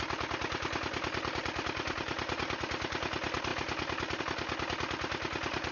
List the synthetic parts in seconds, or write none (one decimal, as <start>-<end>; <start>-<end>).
none